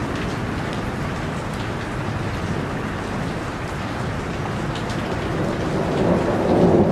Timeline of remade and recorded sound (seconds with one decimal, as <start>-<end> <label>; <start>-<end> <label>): 0.0-6.9 recorded